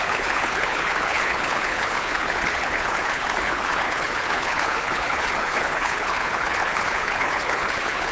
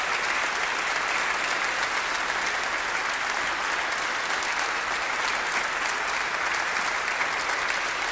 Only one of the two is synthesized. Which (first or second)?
first